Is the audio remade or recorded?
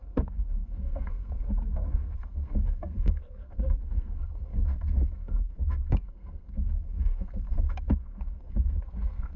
remade